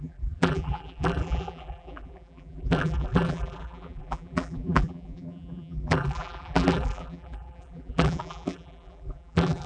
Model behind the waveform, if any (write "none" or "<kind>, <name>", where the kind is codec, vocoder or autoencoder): vocoder, BigVGAN v2